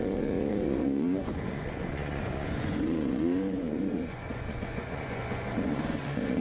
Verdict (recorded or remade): remade